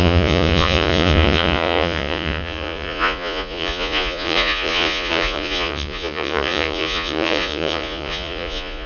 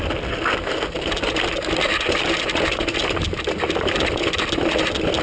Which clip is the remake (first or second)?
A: first